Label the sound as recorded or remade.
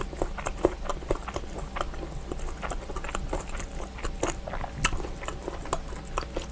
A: recorded